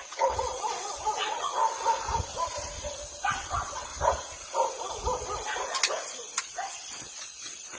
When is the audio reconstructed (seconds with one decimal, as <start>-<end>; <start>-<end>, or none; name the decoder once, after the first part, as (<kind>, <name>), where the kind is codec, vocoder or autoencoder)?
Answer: 0.0-1.6 (vocoder, WaveNeXt); 3.2-3.9; 6.4-7.8